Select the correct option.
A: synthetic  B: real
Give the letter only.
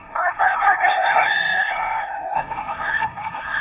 A